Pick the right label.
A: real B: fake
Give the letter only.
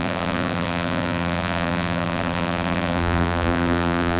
B